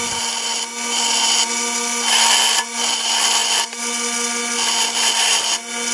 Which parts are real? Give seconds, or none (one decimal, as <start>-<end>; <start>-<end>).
0.0-5.9